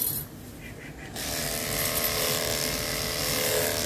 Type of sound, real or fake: real